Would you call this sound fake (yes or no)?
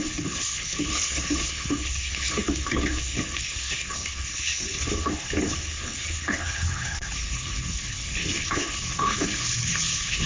yes